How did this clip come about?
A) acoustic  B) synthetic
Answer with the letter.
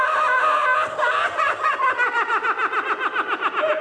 A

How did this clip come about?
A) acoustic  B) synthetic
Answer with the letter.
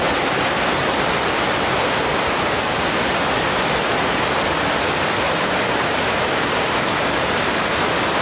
B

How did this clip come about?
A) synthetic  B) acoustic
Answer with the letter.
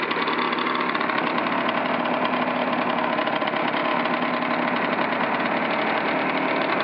B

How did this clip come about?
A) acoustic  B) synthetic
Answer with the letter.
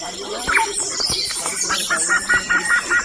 B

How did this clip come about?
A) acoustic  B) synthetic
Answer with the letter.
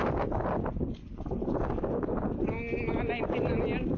A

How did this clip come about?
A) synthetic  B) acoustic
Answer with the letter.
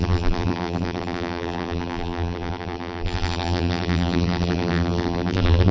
A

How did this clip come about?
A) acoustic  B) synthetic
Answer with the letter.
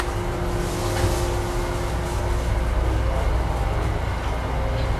A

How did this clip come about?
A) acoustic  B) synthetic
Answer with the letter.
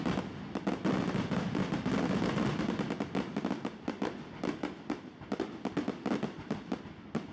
A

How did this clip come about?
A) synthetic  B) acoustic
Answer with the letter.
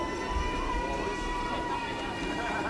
A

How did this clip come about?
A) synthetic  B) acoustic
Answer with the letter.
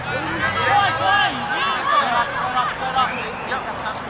B